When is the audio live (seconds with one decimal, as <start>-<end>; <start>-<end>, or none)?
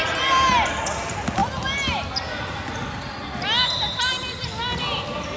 0.0-5.4